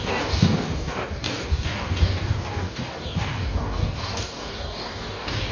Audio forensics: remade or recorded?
remade